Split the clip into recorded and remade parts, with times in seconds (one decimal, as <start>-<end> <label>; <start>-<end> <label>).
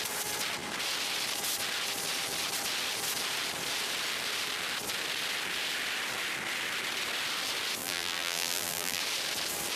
0.0-7.8 recorded; 7.8-9.0 remade; 9.0-9.8 recorded